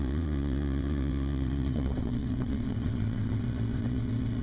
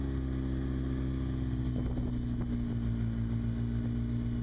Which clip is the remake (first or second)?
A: first